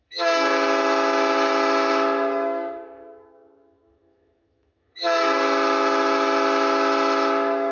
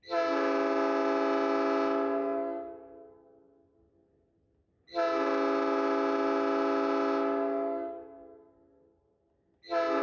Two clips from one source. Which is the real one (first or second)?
second